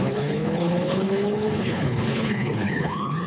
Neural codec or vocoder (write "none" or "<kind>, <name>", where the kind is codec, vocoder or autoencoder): codec, HILCodec